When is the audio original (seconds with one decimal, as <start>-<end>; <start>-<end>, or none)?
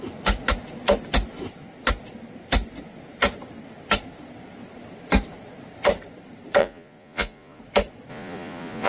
0.0-6.6; 7.6-8.1